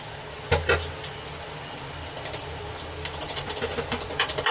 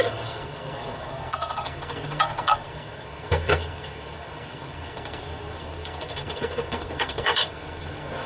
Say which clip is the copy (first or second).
second